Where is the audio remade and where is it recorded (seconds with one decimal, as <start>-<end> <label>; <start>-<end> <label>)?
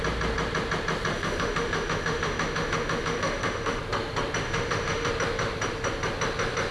0.0-1.1 recorded; 1.1-3.8 remade; 3.8-4.4 recorded; 4.4-5.1 remade; 5.1-6.7 recorded